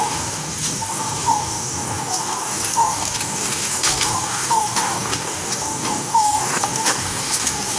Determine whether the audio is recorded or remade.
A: remade